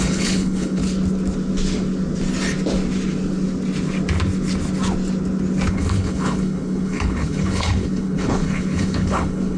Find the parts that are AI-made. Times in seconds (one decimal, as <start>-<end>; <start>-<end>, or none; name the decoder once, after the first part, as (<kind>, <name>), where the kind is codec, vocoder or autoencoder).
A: 0.0-0.8 (codec, HILCodec); 5.7-9.6